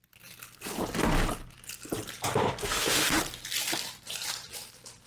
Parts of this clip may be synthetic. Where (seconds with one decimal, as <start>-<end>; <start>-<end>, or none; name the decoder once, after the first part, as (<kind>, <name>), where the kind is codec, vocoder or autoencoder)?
2.6-3.2 (autoencoder, DAC-VAE)